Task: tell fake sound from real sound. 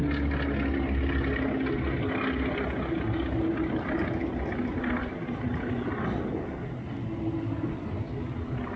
real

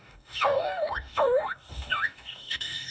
fake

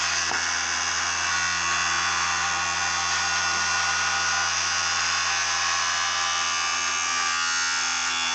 real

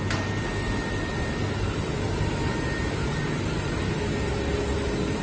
real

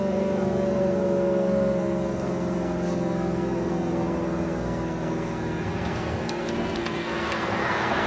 fake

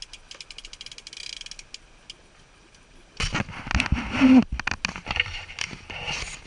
real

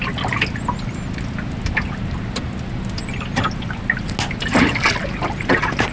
real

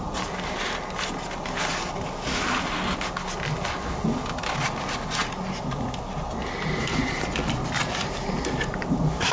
real